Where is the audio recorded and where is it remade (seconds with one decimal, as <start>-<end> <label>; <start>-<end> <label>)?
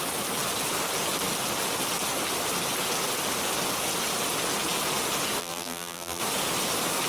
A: 0.0-5.4 recorded; 5.4-6.2 remade; 6.2-7.1 recorded